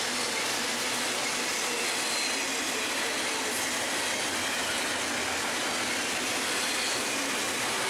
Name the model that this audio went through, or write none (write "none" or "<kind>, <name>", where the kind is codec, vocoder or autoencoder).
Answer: none